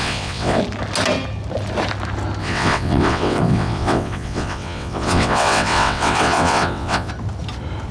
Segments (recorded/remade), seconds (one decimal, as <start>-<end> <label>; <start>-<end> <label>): 0.0-0.6 remade; 0.6-2.4 recorded; 2.4-7.1 remade; 7.1-7.9 recorded